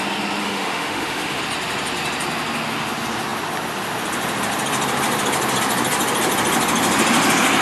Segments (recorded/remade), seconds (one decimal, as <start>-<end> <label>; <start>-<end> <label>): 0.0-0.4 recorded; 0.4-1.4 remade; 1.4-7.6 recorded